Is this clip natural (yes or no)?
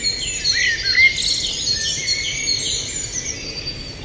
yes